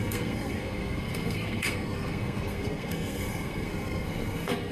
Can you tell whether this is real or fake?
fake